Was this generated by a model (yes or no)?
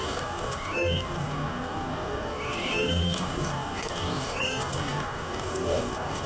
yes